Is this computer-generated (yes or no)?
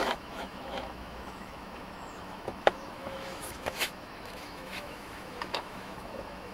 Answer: yes